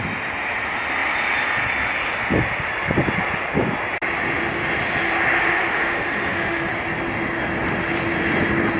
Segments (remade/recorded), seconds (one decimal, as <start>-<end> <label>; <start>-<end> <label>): 0.0-5.4 recorded; 5.4-6.7 remade; 6.7-8.8 recorded